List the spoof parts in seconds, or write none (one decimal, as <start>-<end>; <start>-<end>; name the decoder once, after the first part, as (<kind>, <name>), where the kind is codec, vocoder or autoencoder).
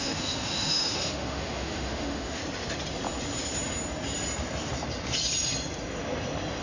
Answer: 0.0-2.4 (autoencoder, DAC-VAE)